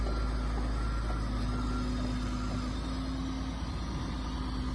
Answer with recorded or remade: recorded